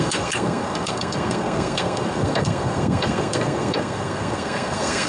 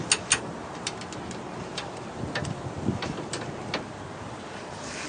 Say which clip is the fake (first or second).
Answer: first